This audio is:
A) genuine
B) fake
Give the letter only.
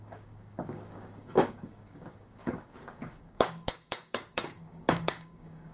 B